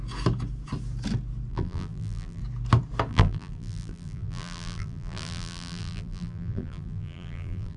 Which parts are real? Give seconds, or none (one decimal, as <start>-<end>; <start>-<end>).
0.0-1.5; 2.4-3.1